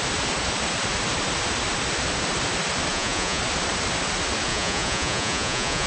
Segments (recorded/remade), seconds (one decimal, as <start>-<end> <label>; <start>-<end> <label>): 0.0-2.9 recorded; 2.9-3.4 remade; 3.4-4.5 recorded; 4.5-5.9 remade